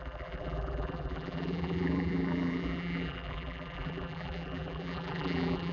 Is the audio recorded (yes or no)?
no